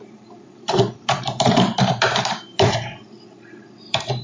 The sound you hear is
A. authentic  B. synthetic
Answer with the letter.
B